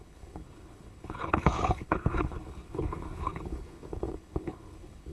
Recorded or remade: remade